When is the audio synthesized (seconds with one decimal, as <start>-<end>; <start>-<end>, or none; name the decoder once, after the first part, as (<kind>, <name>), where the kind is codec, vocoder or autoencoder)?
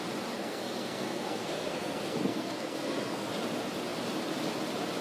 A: 0.4-3.3 (codec, SNAC)